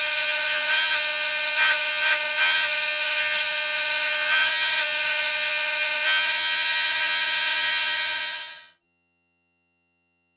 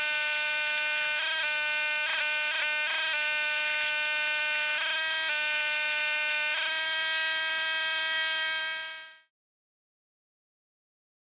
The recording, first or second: second